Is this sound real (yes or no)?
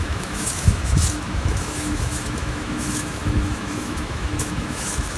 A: no